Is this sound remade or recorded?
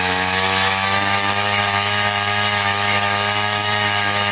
remade